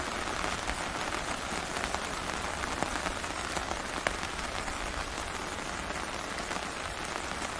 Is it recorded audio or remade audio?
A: recorded